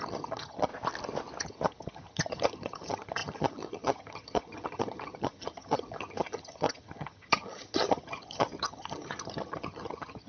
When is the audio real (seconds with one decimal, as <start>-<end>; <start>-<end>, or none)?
0.7-1.4